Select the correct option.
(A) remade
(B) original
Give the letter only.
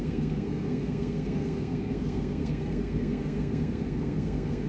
A